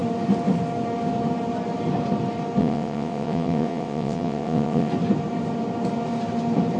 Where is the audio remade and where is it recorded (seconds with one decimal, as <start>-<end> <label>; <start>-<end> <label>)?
0.0-2.6 recorded; 2.6-4.9 remade; 4.9-6.8 recorded